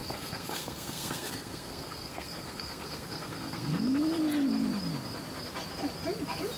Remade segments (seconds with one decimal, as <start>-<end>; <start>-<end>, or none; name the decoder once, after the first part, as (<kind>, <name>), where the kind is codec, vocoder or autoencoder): 0.0-4.0 (codec, SNAC)